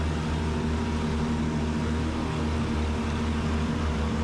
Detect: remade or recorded recorded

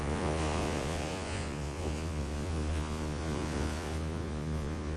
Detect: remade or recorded remade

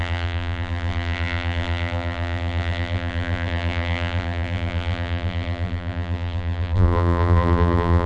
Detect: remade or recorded remade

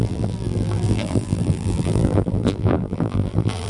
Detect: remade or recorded remade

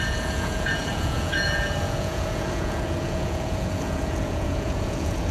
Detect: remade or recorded remade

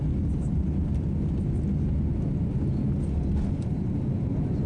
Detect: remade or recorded recorded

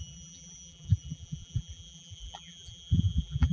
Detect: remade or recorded remade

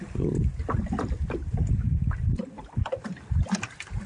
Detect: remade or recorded recorded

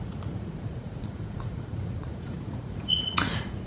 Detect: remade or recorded remade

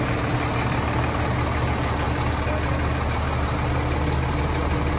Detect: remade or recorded recorded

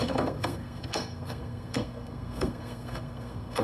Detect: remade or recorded remade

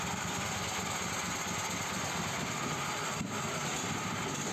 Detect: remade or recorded remade